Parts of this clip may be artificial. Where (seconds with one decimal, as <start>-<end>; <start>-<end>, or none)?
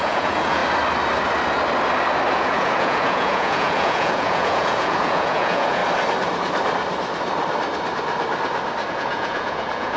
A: 0.0-0.6; 2.3-5.8; 8.9-10.0